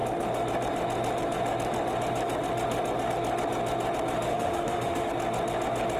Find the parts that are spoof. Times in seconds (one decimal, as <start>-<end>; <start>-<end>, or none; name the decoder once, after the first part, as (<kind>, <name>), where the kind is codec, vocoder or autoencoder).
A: 4.3-5.1 (autoencoder, DAC-VAE)

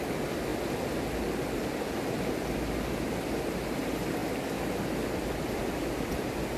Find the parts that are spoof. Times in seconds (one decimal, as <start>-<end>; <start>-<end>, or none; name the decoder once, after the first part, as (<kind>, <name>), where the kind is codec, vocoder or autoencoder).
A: none

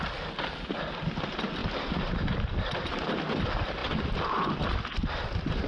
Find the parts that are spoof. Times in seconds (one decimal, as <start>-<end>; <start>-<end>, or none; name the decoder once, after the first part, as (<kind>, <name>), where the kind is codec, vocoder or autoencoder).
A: 1.6-3.0 (vocoder, BigVGAN v2)

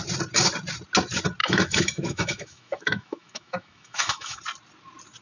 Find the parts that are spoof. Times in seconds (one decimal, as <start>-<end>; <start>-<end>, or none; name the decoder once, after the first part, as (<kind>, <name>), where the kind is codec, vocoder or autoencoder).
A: 1.4-4.4 (autoencoder, DAC-VAE)